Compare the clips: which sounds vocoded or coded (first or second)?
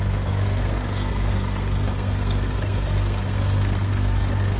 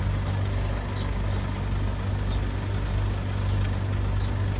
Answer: first